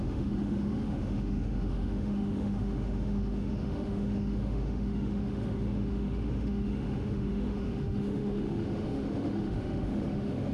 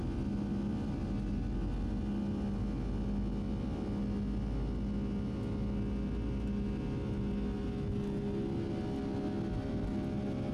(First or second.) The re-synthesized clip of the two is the first